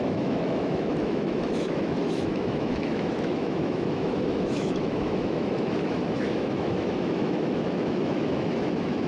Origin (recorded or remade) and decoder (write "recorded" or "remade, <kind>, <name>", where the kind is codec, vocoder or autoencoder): remade, autoencoder, DAC-VAE